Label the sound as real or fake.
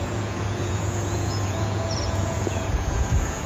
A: fake